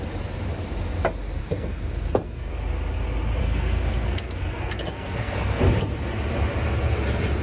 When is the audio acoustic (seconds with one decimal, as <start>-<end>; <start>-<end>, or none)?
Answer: 0.0-1.4; 2.5-3.4; 5.6-7.4